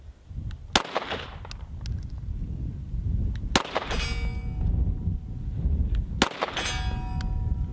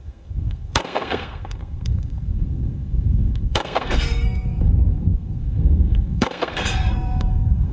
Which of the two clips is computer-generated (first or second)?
second